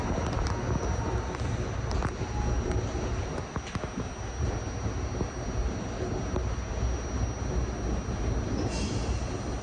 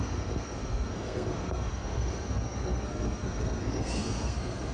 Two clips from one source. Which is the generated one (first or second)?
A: second